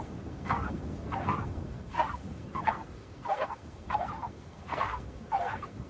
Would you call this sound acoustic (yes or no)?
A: no